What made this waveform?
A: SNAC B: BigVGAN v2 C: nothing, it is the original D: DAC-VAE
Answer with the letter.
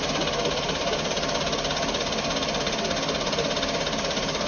C